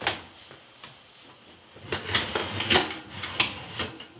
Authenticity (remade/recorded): recorded